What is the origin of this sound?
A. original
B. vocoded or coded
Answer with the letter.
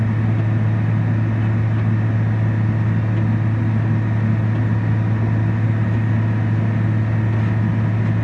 A